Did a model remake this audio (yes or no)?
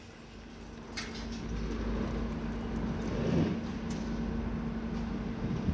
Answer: no